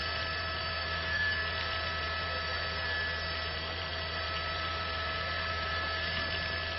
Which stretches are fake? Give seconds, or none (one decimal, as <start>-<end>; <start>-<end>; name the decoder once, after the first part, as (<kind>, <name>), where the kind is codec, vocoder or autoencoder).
0.6-1.4 (autoencoder, DAC-VAE); 5.5-6.2